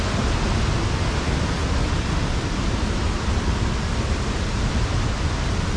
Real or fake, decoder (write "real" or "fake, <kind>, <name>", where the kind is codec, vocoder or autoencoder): real